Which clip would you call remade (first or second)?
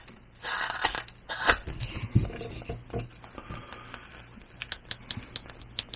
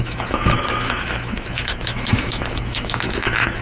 second